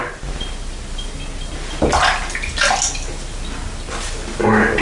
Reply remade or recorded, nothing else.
recorded